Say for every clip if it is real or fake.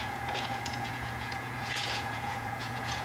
fake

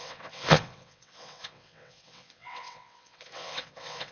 fake